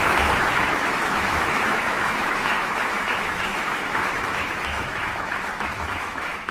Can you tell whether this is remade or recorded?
remade